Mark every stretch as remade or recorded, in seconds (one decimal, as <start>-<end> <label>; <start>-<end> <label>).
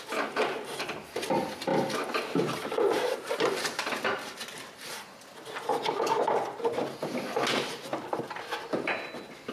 0.0-1.7 recorded; 1.7-6.2 remade; 6.2-7.9 recorded; 7.9-8.8 remade; 8.8-9.5 recorded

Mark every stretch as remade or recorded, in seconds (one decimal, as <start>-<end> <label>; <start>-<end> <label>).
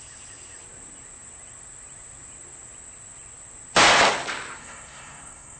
0.0-4.6 recorded; 4.6-5.6 remade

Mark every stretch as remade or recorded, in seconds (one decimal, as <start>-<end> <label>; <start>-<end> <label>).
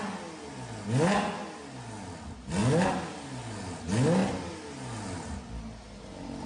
0.0-6.5 recorded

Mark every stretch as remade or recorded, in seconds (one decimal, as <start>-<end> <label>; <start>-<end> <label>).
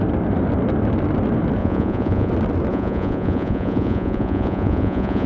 0.0-1.6 recorded; 1.6-2.3 remade; 2.3-2.7 recorded; 2.7-5.3 remade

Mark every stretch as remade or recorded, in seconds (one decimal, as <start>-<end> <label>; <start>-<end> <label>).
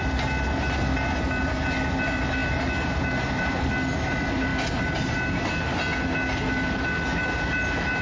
0.0-8.0 recorded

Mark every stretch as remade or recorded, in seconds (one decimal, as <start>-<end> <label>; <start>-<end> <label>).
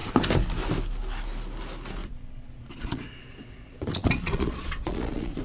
0.0-2.0 recorded; 2.0-5.4 remade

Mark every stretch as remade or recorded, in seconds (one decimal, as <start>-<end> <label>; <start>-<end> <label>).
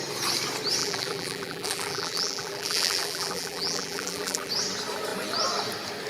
0.0-0.8 recorded; 0.8-4.5 remade; 4.5-6.1 recorded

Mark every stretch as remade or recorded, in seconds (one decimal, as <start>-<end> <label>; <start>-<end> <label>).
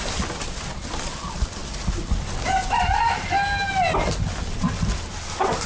0.0-5.7 recorded